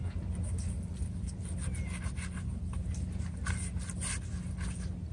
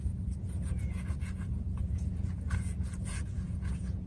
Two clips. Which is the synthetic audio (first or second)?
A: second